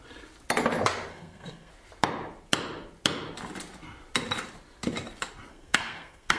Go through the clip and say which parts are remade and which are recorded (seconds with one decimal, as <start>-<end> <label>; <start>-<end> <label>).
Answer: 0.0-1.1 recorded; 1.1-1.7 remade; 1.7-5.5 recorded; 5.5-6.4 remade